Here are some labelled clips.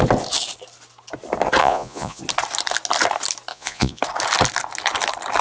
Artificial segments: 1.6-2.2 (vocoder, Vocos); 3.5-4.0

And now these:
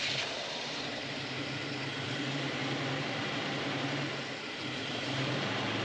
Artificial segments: 0.0-5.8 (vocoder, BigVGAN v2)

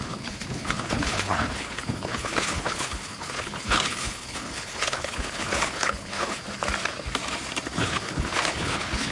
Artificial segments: 0.0-6.4 (codec, HILCodec); 7.8-9.1

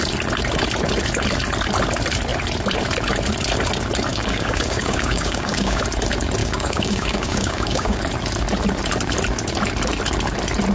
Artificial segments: 4.1-5.8 (codec, DAC); 6.4-8.0

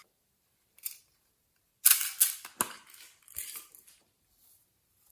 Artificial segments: 0.0-1.7 (vocoder, BigVGAN v2); 4.5-5.1

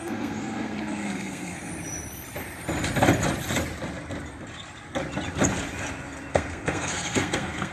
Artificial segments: 0.0-1.7 (codec, SNAC); 6.3-7.7